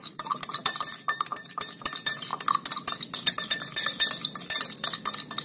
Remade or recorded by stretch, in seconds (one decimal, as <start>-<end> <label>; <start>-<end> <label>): 0.0-2.3 remade; 2.3-5.4 recorded